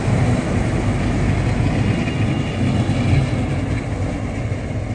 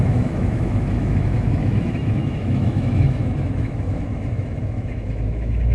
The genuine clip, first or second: first